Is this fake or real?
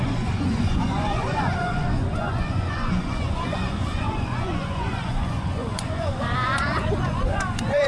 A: fake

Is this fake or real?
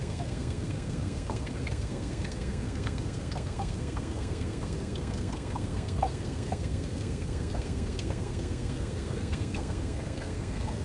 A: fake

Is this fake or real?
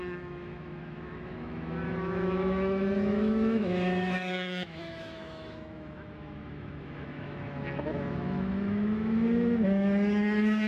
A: fake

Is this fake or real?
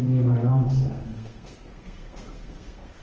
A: fake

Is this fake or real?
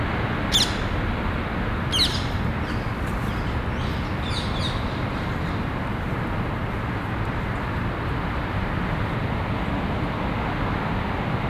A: real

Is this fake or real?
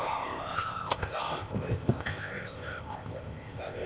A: fake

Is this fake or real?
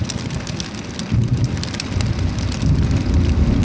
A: real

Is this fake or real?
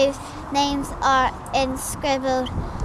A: real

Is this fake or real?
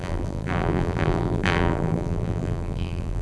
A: fake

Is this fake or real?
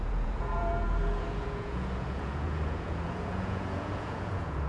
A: fake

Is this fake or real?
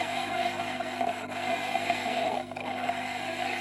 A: fake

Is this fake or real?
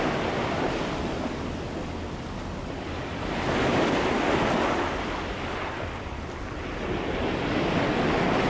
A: real